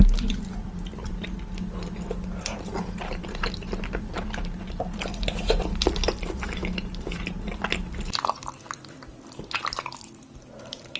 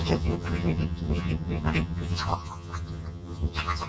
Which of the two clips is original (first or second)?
first